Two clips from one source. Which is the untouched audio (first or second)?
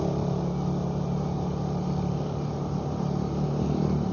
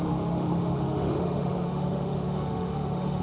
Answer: first